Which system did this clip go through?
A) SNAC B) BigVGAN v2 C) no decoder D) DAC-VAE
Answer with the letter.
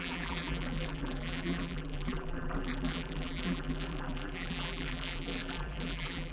B